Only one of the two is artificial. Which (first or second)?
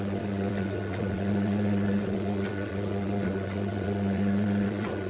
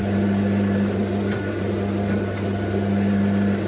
first